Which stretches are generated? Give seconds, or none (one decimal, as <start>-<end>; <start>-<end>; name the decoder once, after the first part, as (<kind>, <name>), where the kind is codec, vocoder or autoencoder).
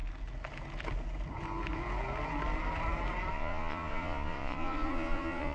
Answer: 3.3-5.5 (vocoder, Vocos)